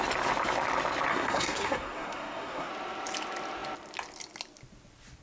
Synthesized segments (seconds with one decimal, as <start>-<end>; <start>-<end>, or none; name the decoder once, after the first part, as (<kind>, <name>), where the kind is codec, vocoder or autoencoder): 1.1-2.7 (codec, SNAC)

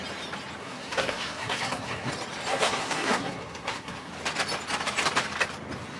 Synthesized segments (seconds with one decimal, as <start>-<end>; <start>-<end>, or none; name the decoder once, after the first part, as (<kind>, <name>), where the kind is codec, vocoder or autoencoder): 0.6-2.1 (codec, SNAC); 2.5-4.1

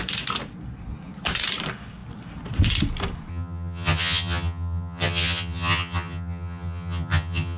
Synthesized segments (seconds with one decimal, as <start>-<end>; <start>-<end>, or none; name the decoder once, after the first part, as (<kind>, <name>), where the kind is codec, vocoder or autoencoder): 3.3-7.6 (vocoder, HiFi-GAN)

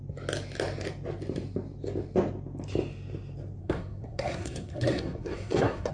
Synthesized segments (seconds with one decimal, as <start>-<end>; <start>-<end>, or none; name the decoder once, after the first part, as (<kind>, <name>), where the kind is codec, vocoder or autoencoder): 3.6-5.9 (codec, SNAC)

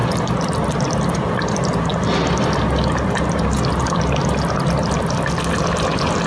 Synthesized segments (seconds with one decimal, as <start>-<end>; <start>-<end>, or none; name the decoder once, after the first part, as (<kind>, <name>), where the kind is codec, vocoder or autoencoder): none

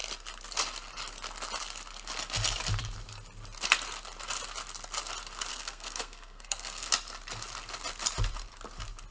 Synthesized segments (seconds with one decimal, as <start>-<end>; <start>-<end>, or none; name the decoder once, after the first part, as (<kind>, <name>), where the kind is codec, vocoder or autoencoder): 5.5-6.9 (codec, SNAC)

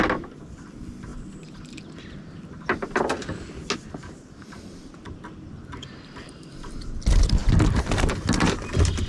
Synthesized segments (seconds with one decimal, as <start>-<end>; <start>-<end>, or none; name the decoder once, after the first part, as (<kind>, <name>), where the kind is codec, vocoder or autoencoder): none